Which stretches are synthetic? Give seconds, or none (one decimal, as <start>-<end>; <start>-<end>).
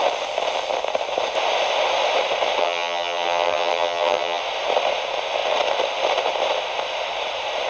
2.6-4.4